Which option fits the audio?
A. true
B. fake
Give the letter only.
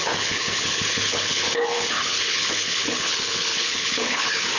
B